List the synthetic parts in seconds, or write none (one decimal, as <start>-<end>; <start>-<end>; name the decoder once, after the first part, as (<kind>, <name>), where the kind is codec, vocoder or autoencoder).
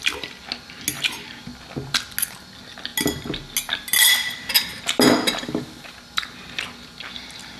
none